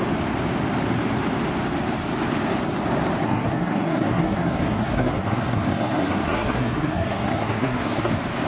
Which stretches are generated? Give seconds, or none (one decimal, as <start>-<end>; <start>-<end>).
3.2-8.1